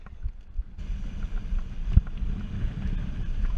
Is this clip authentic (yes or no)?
yes